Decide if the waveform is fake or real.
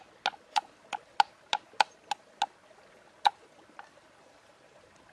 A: real